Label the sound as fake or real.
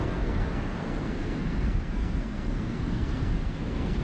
fake